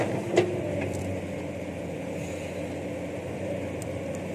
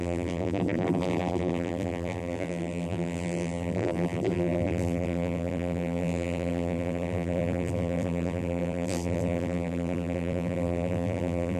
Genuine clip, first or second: first